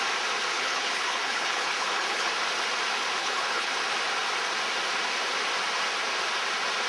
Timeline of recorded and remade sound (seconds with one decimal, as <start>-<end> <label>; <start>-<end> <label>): 0.0-0.5 recorded; 0.5-2.3 remade; 2.3-3.2 recorded; 3.2-3.7 remade; 3.7-6.9 recorded